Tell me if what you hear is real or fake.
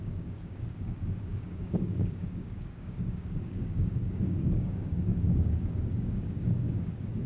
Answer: fake